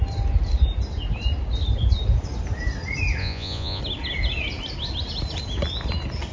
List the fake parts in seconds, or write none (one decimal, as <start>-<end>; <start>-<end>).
3.2-3.8